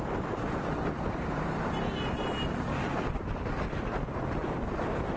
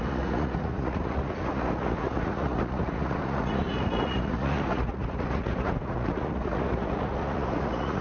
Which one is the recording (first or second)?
first